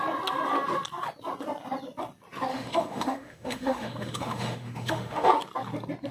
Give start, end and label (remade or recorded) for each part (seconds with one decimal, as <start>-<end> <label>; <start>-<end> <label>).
0.0-2.5 recorded; 2.5-5.3 remade; 5.3-6.1 recorded